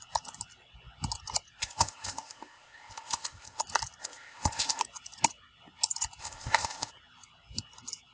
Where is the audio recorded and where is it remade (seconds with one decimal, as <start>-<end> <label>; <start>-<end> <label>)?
0.0-1.6 recorded; 1.6-3.6 remade; 3.6-4.0 recorded; 4.0-4.8 remade; 4.8-6.2 recorded; 6.2-6.9 remade; 6.9-8.1 recorded